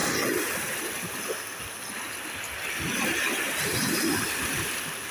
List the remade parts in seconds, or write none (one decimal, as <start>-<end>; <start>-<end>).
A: 1.6-5.1